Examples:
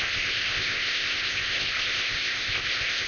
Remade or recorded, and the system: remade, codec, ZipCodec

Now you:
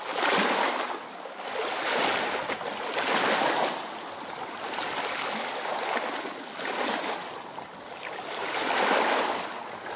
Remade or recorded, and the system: recorded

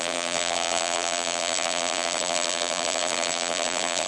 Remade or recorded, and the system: remade, vocoder, BigVGAN v2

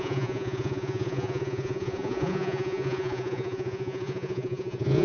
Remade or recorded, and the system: remade, vocoder, Vocos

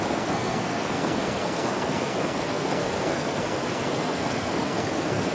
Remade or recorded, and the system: remade, codec, SNAC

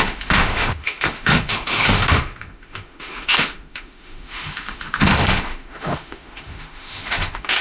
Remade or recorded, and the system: remade, autoencoder, DAC-VAE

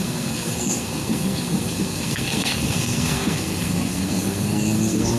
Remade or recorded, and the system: remade, codec, SNAC